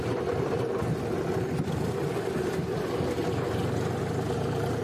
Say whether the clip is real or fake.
real